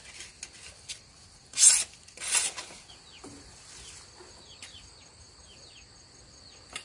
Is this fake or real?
real